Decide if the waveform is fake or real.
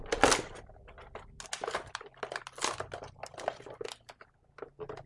real